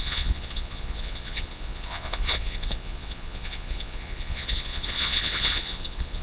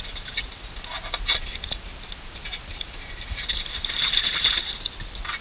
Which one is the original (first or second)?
second